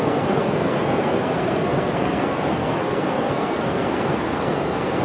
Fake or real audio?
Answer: fake